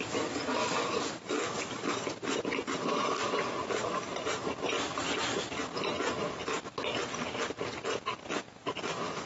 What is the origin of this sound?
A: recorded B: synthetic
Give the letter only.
A